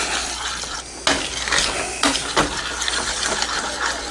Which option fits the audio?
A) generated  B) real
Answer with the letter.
B